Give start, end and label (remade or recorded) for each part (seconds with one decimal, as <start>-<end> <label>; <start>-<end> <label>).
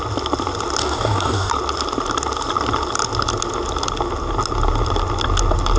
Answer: 0.0-0.8 recorded; 0.8-1.5 remade; 1.5-5.8 recorded